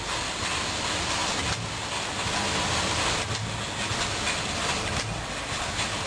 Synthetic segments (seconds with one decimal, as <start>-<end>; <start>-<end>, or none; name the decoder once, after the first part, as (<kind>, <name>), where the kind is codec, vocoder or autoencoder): none